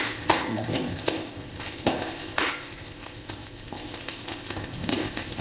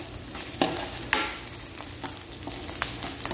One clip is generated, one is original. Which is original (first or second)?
second